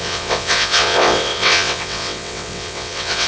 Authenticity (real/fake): fake